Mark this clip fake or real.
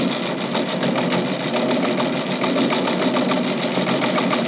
real